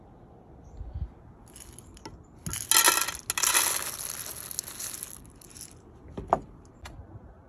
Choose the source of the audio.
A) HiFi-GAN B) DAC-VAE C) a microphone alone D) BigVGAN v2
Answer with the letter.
C